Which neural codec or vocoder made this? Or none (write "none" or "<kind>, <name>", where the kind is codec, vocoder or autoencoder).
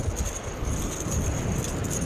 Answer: none